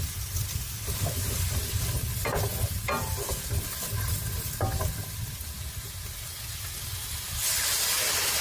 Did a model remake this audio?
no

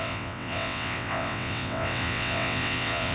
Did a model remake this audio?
yes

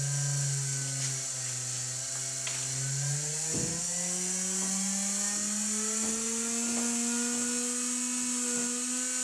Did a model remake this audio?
no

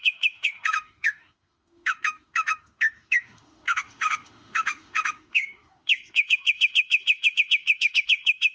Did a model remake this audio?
yes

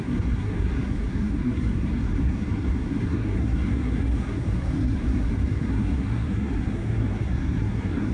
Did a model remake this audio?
yes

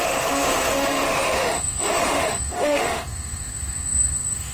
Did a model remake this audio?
yes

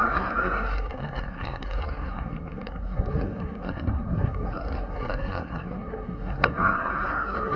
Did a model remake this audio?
yes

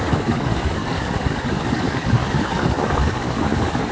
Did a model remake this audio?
yes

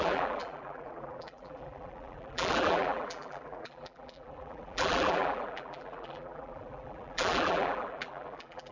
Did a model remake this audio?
yes